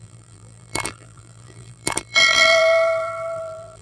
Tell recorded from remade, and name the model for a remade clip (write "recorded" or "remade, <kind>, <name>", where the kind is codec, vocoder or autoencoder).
remade, vocoder, BigVGAN v2